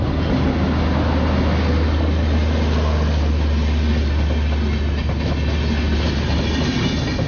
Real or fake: real